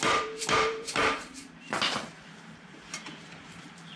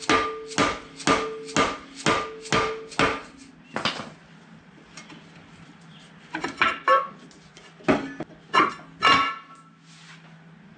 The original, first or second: second